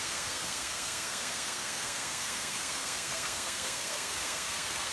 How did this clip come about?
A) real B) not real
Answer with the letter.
B